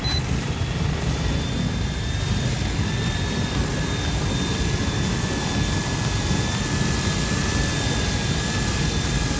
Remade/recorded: remade